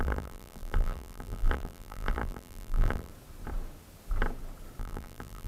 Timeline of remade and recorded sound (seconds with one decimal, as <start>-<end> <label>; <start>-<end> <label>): 0.0-3.1 remade; 3.1-4.8 recorded; 4.8-5.5 remade